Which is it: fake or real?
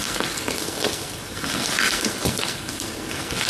fake